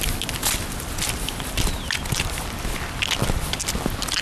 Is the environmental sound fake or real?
real